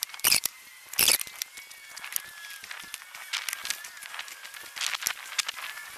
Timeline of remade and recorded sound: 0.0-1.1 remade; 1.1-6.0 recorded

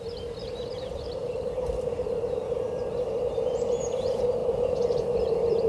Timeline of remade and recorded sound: 0.0-5.7 remade

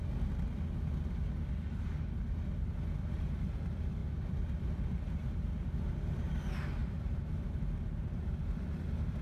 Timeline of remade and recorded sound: 0.0-6.8 recorded; 6.8-7.6 remade; 7.6-9.2 recorded

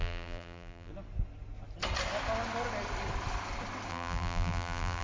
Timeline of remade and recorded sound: 0.0-0.9 remade; 0.9-3.9 recorded; 3.9-5.0 remade

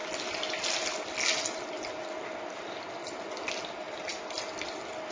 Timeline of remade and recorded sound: 0.0-2.4 recorded; 2.4-5.1 remade

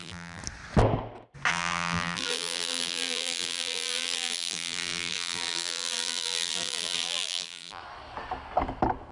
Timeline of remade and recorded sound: 0.0-0.4 remade; 0.4-1.5 recorded; 1.5-7.8 remade; 7.8-9.1 recorded

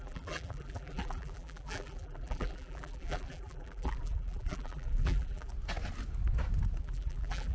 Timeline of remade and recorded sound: 0.0-5.5 remade; 5.5-6.8 recorded; 6.8-7.5 remade